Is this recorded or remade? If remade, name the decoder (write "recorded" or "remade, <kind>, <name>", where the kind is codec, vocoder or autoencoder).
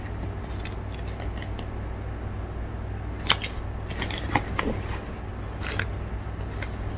recorded